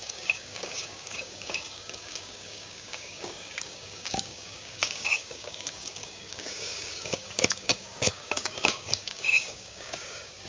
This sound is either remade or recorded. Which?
remade